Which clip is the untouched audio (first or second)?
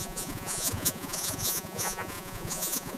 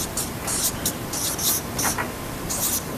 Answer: second